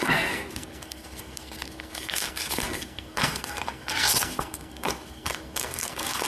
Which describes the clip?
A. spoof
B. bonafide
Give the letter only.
A